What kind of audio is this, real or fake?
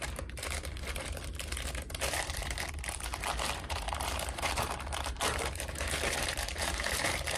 fake